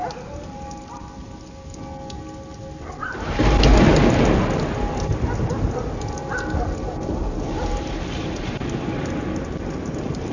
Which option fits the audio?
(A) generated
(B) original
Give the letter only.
B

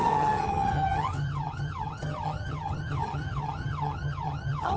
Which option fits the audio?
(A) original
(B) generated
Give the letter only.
B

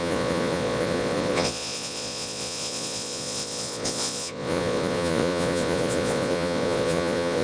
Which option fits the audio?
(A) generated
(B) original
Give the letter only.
A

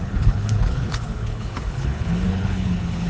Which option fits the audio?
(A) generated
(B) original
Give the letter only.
A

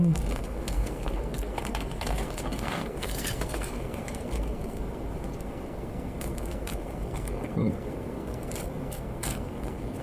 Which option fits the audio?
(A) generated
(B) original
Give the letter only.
A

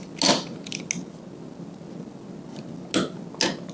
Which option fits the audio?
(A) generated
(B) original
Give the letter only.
B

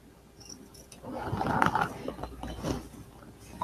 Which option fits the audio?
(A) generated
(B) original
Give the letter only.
B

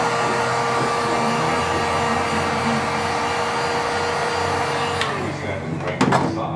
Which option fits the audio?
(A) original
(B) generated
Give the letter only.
A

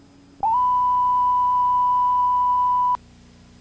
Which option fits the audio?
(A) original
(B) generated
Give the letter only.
A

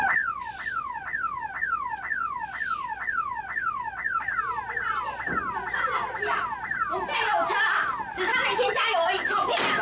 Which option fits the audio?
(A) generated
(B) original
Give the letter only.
B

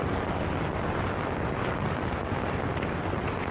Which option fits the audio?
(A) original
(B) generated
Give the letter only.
A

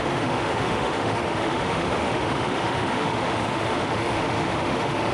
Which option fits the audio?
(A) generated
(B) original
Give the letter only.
A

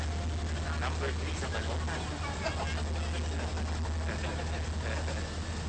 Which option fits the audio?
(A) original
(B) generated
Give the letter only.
A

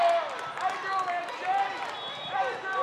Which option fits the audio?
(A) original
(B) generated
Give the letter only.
A